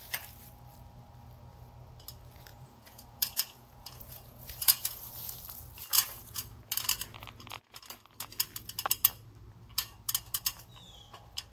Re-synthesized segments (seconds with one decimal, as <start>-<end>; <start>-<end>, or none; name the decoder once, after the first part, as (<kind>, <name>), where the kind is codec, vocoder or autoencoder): 2.5-5.1 (vocoder, Vocos); 5.9-6.7